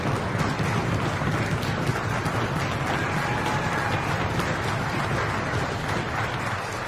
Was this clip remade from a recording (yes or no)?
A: no